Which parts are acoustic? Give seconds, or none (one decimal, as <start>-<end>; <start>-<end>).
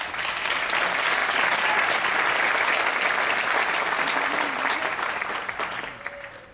0.0-1.2; 4.7-6.5